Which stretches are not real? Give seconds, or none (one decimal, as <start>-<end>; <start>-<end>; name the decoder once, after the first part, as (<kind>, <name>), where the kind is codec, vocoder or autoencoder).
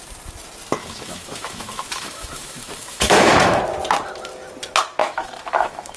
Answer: 0.8-3.6 (autoencoder, DAC-VAE); 5.0-6.0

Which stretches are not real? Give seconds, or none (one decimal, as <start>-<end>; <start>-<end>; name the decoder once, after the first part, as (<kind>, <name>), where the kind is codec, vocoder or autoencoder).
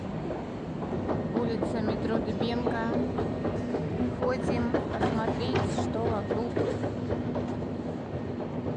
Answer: 3.7-4.2 (autoencoder, DAC-VAE)